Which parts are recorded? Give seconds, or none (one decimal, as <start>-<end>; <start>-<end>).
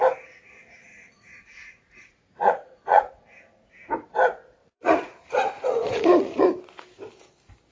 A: 0.0-0.9; 3.1-4.6; 6.5-7.7